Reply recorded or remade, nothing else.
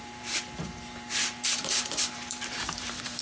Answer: remade